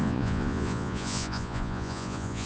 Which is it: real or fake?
fake